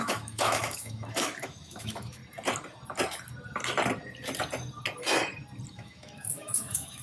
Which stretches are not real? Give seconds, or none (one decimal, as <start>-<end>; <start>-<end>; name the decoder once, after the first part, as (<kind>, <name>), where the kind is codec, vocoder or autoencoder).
0.0-2.2 (autoencoder, DAC-VAE); 5.7-7.0